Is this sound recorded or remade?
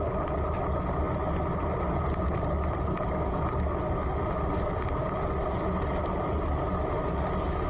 recorded